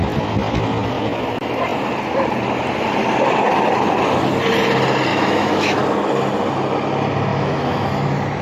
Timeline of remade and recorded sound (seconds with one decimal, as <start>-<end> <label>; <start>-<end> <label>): 0.0-5.1 recorded; 5.1-5.8 remade; 5.8-7.3 recorded; 7.3-7.9 remade; 7.9-8.4 recorded